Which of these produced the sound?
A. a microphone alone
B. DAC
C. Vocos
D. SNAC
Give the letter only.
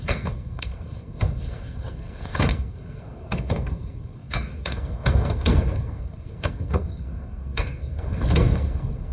D